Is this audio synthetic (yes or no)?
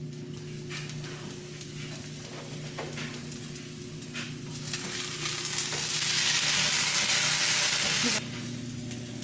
no